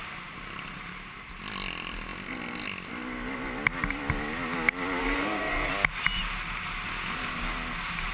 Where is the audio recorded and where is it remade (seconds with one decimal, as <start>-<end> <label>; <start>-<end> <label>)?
0.0-5.0 recorded; 5.0-5.7 remade; 5.7-8.1 recorded